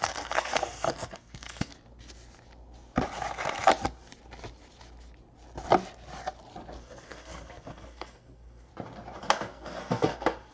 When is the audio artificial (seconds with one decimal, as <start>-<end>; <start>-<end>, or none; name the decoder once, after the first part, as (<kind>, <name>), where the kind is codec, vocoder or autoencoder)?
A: 0.0-1.7 (codec, SNAC); 6.8-8.7; 9.2-10.5